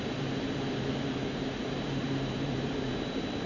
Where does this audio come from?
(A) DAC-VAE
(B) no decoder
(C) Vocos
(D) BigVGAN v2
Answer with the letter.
D